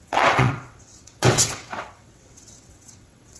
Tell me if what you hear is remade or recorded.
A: remade